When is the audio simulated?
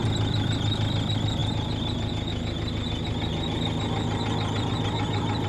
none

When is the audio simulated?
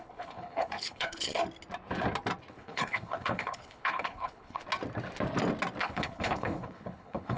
0.0-1.4 (codec, HILCodec); 2.5-4.6; 5.8-7.4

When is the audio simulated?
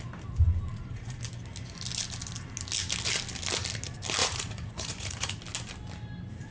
0.7-1.2 (vocoder, Vocos); 4.2-5.4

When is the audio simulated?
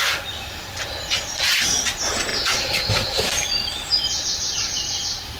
0.6-1.4 (vocoder, BigVGAN v2); 2.3-5.4